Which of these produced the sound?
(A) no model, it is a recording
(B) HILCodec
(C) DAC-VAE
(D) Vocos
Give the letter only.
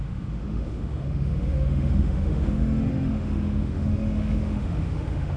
C